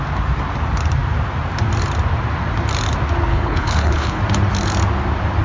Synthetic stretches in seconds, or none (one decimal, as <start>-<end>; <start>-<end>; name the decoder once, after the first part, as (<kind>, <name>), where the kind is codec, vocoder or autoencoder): 3.3-4.2 (codec, HILCodec)